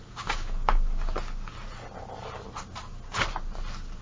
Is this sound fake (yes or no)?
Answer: no